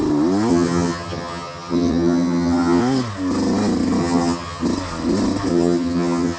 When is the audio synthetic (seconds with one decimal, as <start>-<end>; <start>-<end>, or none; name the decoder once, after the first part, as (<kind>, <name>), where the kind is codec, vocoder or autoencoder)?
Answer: 0.5-2.8 (vocoder, HiFi-GAN); 4.0-4.6; 5.5-6.4